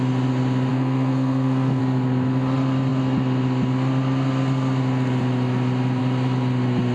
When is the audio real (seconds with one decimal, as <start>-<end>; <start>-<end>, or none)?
0.0-0.7; 1.8-6.9